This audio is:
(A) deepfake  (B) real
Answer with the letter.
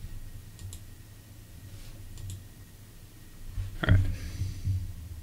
B